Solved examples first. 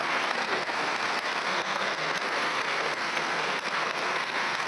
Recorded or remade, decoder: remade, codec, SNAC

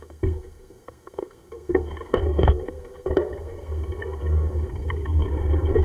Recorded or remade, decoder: remade, codec, SNAC